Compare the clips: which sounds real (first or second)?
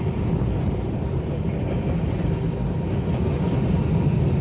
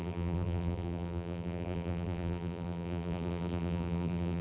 first